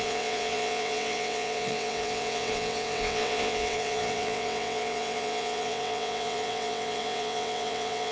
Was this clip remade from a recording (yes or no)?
yes